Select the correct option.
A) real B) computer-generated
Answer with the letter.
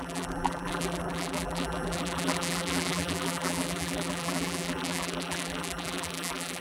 B